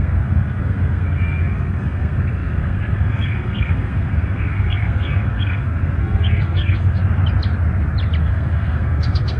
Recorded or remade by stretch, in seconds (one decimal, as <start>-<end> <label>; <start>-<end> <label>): 0.0-7.0 remade; 7.0-8.2 recorded; 8.2-9.4 remade